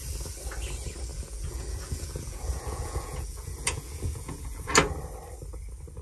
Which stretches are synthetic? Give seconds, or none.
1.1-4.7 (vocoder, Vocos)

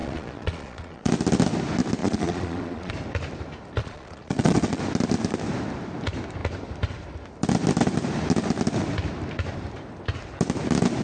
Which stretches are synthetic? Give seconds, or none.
0.0-1.1 (vocoder, Vocos); 2.0-2.9; 3.8-4.8